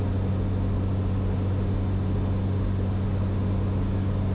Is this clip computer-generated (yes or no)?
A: no